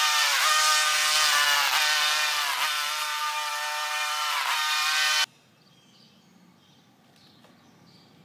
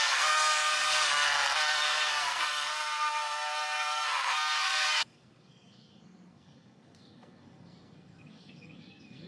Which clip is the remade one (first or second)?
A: second